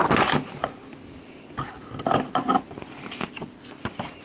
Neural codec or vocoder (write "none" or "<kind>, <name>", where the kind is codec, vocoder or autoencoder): none